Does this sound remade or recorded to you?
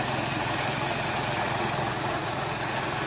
remade